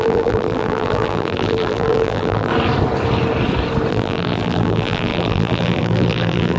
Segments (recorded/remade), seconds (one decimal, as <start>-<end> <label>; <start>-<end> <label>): 0.0-2.5 remade; 2.5-3.9 recorded; 3.9-6.6 remade